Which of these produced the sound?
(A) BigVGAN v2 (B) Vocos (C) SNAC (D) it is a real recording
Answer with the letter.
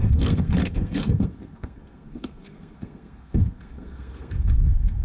C